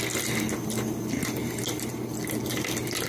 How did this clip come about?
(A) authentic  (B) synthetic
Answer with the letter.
A